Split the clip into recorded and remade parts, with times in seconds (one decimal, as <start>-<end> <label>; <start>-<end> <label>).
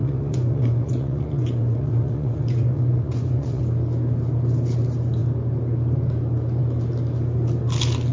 0.0-3.6 remade; 3.6-8.1 recorded